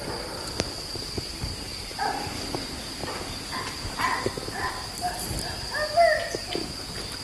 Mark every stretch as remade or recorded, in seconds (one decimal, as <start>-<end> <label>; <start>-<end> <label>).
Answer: 0.0-7.2 recorded